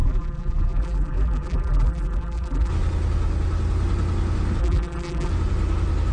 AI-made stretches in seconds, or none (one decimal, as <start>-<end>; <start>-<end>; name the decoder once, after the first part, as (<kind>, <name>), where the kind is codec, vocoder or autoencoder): 0.0-2.7 (vocoder, BigVGAN v2); 4.6-5.3